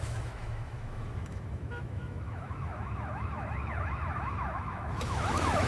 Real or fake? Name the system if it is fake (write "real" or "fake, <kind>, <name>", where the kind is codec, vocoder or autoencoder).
fake, autoencoder, DAC-VAE